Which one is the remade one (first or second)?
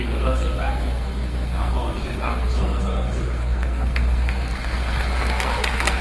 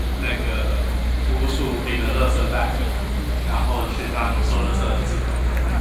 first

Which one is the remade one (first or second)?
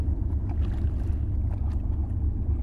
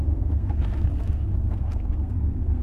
second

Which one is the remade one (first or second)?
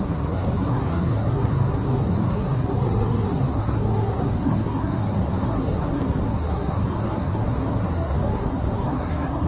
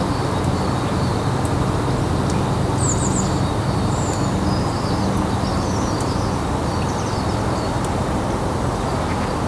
first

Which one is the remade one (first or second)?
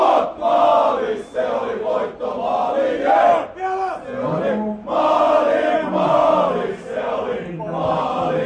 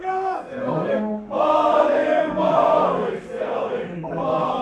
second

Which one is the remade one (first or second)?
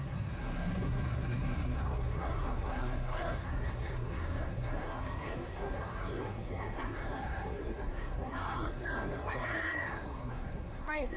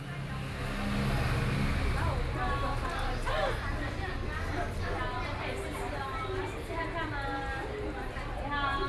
first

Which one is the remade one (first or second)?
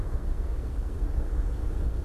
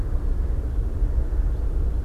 first